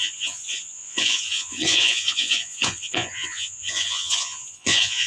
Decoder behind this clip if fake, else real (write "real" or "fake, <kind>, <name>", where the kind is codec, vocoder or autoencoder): fake, vocoder, Vocos